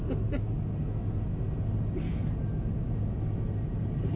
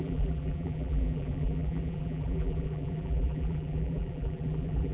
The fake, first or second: second